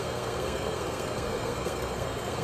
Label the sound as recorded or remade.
remade